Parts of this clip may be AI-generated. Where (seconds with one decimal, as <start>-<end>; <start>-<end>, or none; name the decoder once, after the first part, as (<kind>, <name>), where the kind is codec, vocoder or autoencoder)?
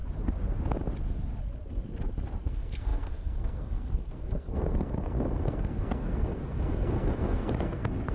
2.4-8.1 (codec, SNAC)